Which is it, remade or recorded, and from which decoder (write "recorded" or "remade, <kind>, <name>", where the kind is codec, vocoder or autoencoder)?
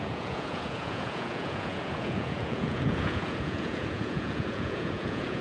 remade, vocoder, Vocos